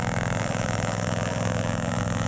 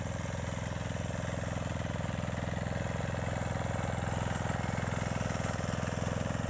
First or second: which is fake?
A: first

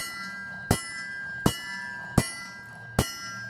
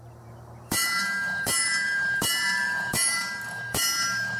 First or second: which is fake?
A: second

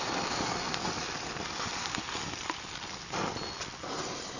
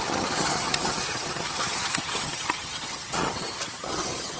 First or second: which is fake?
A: second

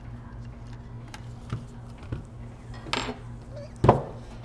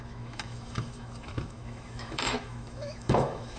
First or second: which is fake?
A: second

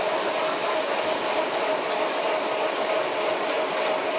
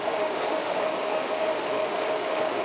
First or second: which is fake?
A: second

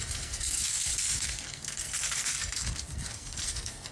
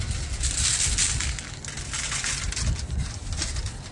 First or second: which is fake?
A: first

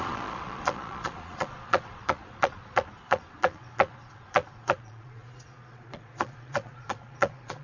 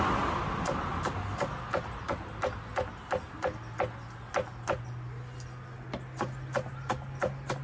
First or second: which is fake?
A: first